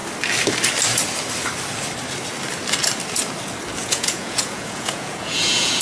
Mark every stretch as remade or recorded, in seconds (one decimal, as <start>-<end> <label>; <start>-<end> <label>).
0.0-3.8 recorded; 3.8-5.8 remade